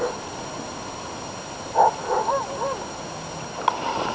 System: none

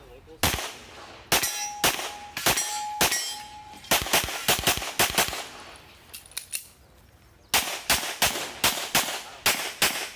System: none